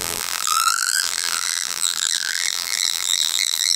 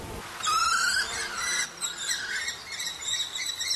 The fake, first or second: first